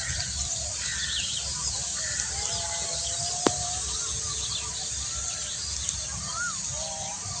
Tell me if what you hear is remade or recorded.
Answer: recorded